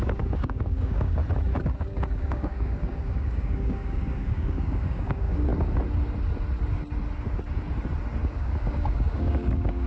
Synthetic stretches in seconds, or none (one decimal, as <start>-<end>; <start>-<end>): 0.0-1.2; 1.8-5.5; 8.2-9.9